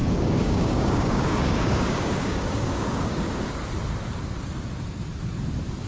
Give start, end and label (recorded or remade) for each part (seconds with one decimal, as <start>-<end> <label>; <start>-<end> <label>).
0.0-3.5 remade; 3.5-5.9 recorded